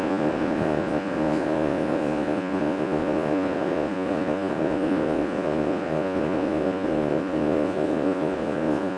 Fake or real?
fake